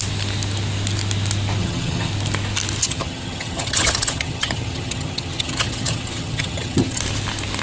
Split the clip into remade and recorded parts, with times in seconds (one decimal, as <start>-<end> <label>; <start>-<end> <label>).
0.0-1.6 recorded; 1.6-2.1 remade; 2.1-2.8 recorded; 2.8-7.0 remade; 7.0-7.6 recorded